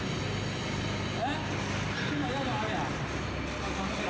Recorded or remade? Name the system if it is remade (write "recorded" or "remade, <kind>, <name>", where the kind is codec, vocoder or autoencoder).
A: recorded